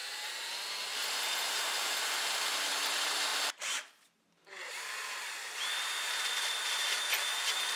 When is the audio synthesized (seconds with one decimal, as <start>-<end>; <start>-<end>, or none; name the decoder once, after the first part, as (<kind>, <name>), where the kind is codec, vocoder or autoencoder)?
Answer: 0.0-2.1 (vocoder, BigVGAN v2); 3.3-7.8